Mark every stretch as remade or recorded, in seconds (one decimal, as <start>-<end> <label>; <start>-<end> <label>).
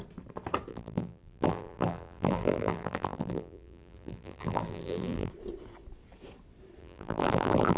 0.0-0.7 recorded; 0.7-5.3 remade; 5.3-6.8 recorded; 6.8-7.8 remade